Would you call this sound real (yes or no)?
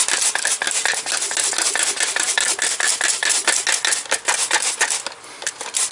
yes